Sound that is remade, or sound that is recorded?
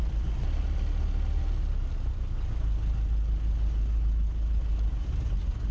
recorded